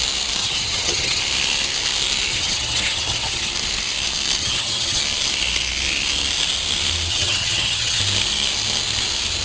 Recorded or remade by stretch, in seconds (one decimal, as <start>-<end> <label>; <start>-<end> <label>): 0.0-0.4 recorded; 0.4-1.2 remade; 1.2-2.3 recorded; 2.3-3.5 remade; 3.5-4.4 recorded; 4.4-5.0 remade; 5.0-7.1 recorded; 7.1-8.0 remade; 8.0-9.4 recorded